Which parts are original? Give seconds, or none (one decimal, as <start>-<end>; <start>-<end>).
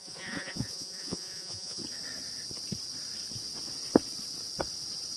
1.8-5.2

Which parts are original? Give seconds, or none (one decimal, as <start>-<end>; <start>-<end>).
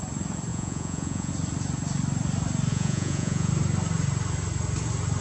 0.0-0.5; 1.3-2.7; 3.5-5.2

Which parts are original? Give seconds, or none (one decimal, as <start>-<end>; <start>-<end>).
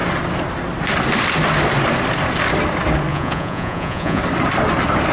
0.0-3.1; 4.2-5.1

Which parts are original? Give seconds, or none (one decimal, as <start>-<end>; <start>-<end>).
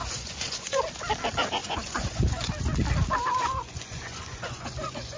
0.8-1.6; 2.5-3.3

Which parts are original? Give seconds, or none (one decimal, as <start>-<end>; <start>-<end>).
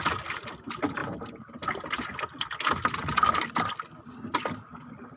0.0-5.2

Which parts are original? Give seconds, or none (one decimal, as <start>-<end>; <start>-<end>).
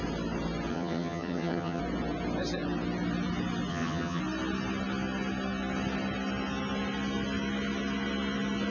0.0-0.7; 1.8-3.7; 4.2-8.7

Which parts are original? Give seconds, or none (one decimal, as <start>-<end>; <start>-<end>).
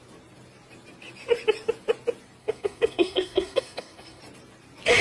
0.0-2.4; 4.2-5.0